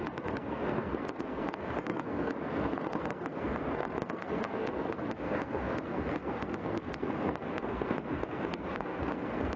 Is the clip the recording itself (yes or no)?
no